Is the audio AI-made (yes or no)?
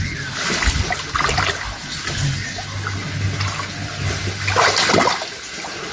no